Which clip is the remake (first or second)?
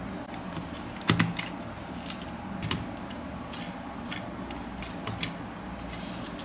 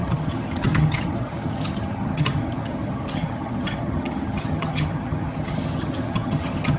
second